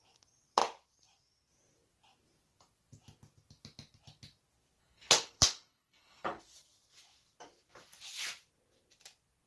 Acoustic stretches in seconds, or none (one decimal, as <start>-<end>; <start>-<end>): 0.0-4.8; 6.4-9.5